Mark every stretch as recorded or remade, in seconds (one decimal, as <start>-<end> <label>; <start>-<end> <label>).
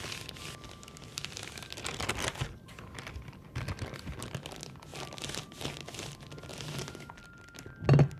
0.0-4.9 recorded; 4.9-5.7 remade; 5.7-6.5 recorded; 6.5-7.2 remade; 7.2-8.2 recorded